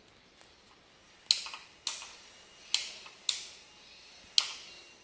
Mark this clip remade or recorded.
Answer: recorded